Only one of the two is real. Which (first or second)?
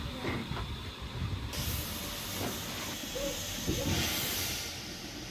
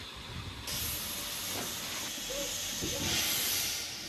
second